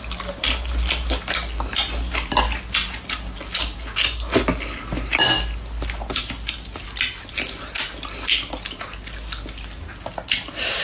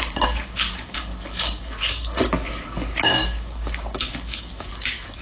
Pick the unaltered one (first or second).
first